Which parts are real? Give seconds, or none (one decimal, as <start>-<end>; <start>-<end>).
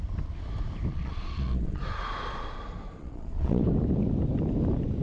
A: 0.0-0.9; 1.8-3.0; 3.6-5.0